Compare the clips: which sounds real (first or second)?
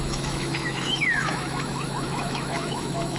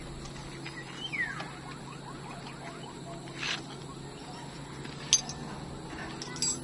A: second